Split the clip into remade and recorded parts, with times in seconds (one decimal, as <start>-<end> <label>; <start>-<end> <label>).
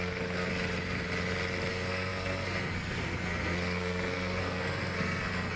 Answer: 0.0-0.5 remade; 0.5-1.7 recorded; 1.7-5.6 remade